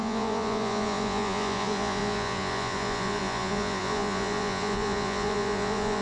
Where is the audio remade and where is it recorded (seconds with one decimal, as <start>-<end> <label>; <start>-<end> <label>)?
0.0-6.0 remade